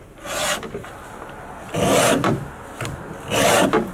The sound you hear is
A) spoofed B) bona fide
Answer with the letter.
B